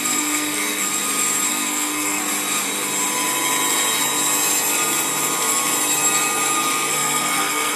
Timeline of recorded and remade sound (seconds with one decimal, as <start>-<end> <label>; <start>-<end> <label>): 0.0-0.9 remade; 0.9-1.5 recorded; 1.5-2.2 remade; 2.2-6.9 recorded; 6.9-7.8 remade